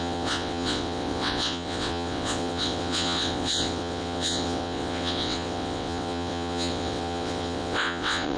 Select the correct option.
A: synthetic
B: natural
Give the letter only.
A